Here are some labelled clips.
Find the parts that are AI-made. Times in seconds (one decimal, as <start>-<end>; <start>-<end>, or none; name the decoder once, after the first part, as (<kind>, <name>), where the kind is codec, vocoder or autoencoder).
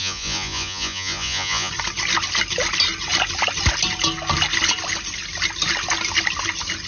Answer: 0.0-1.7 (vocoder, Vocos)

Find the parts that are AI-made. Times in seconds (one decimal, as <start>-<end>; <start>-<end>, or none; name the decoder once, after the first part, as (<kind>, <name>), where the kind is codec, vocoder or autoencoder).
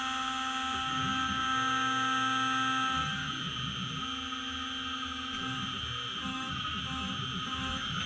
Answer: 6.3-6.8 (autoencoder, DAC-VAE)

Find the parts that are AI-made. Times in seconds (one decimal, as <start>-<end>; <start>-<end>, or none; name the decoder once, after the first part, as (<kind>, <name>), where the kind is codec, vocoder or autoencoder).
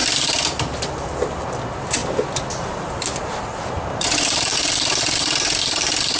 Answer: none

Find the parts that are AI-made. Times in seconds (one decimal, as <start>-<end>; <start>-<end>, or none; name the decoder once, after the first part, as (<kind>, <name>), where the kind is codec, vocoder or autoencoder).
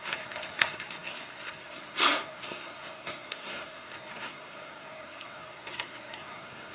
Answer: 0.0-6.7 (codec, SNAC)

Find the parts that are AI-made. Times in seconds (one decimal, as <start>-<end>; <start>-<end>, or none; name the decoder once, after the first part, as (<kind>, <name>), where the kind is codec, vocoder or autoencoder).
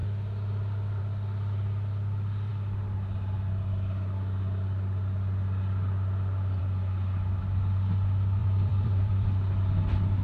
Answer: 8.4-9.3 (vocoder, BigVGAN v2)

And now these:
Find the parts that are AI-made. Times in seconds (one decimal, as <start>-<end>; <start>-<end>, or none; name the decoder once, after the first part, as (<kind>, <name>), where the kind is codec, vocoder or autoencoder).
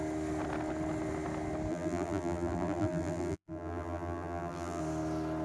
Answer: 1.7-4.8 (vocoder, BigVGAN v2)